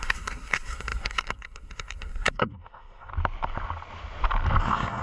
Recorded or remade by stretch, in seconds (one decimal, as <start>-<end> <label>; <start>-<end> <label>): 0.0-3.1 remade; 3.1-4.6 recorded; 4.6-5.0 remade

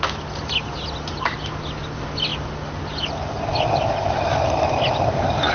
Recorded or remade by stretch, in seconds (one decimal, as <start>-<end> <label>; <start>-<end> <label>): 0.0-5.5 recorded

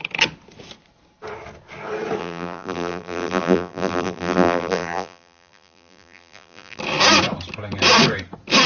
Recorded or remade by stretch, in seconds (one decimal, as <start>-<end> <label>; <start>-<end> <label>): 0.0-2.2 recorded; 2.2-6.8 remade; 6.8-8.7 recorded

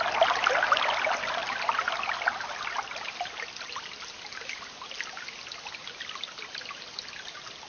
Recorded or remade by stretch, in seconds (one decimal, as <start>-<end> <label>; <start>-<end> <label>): 0.0-7.7 recorded